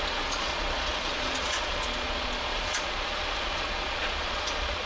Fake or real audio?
fake